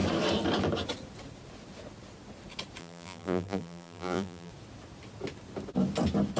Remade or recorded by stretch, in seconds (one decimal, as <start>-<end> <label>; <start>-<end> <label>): 0.0-2.8 recorded; 2.8-4.5 remade; 4.5-6.4 recorded